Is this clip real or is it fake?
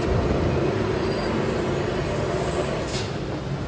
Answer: real